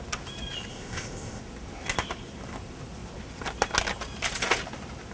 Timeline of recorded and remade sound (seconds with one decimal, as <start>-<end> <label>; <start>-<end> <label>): 0.0-0.7 recorded; 0.7-1.4 remade; 1.4-5.1 recorded

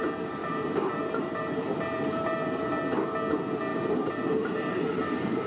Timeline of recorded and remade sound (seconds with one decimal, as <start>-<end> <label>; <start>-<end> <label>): 0.0-0.4 recorded; 0.4-2.8 remade; 2.8-3.7 recorded; 3.7-5.5 remade

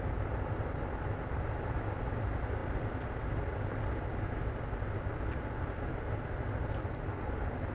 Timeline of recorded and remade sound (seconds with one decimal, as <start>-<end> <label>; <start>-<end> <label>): 0.0-7.7 recorded

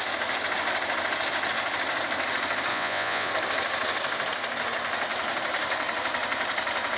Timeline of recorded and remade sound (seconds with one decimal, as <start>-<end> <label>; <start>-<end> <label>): 0.0-2.7 recorded; 2.7-3.3 remade; 3.3-7.0 recorded

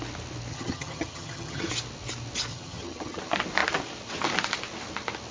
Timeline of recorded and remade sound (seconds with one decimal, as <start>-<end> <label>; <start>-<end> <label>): 0.0-0.5 recorded; 0.5-1.7 remade; 1.7-2.5 recorded; 2.5-3.2 remade; 3.2-5.3 recorded